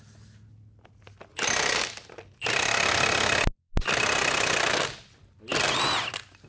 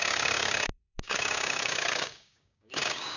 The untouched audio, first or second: first